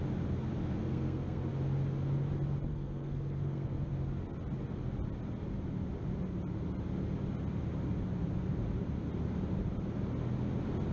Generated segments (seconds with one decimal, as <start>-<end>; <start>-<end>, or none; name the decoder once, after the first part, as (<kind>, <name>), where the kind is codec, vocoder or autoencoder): 0.6-1.5 (codec, SNAC); 2.7-3.9